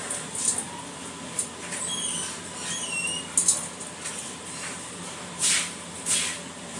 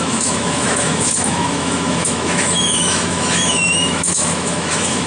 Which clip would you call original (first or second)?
first